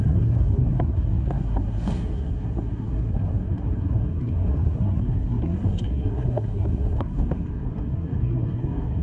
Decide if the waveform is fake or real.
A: fake